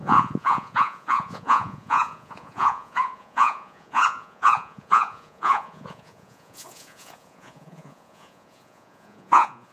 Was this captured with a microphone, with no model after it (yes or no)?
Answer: no